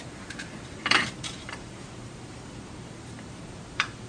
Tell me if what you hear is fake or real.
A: fake